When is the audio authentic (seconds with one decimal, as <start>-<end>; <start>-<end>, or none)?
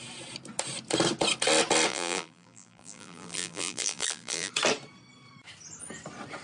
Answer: 0.0-1.9; 4.5-6.4